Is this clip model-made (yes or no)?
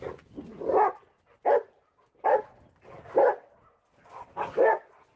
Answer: no